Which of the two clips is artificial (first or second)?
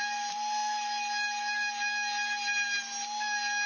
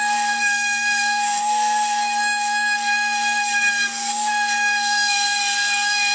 second